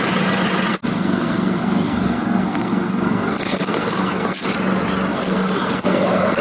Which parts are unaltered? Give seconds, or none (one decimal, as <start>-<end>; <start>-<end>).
0.0-0.7; 4.5-5.1